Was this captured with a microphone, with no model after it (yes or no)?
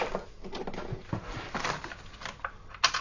yes